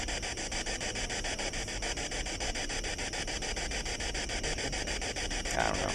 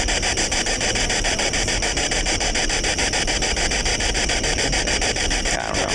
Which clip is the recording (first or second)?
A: first